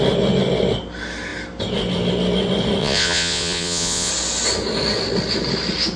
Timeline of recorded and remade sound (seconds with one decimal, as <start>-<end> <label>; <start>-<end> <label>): 0.0-2.8 recorded; 2.8-4.1 remade; 4.1-6.0 recorded